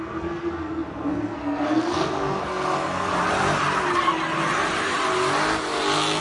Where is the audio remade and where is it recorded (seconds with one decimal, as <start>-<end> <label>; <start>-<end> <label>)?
0.0-3.1 remade; 3.1-6.2 recorded